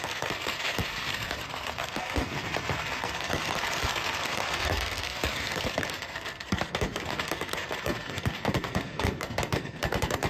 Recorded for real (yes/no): no